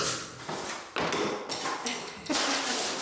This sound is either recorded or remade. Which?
recorded